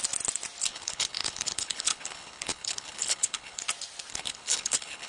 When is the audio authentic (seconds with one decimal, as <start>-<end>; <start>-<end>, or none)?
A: 0.0-0.7; 3.6-4.1